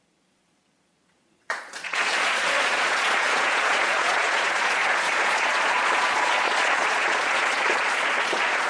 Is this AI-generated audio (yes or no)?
yes